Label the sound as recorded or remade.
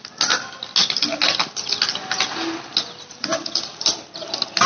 recorded